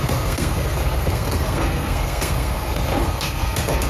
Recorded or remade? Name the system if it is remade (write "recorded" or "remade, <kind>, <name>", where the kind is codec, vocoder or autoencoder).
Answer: remade, codec, SNAC